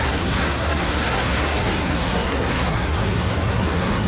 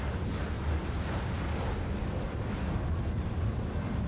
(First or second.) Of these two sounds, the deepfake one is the first